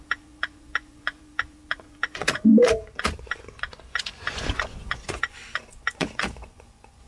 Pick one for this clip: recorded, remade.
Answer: remade